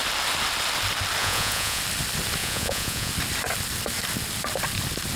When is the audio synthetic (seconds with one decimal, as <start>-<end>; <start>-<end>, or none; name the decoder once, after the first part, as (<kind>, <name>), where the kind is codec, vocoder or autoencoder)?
1.2-1.8 (vocoder, Vocos); 2.4-3.1